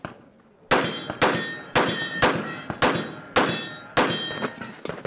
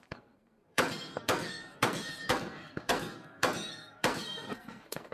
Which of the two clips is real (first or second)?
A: first